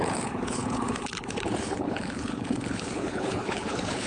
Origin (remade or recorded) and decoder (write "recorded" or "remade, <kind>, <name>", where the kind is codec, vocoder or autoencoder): remade, codec, HILCodec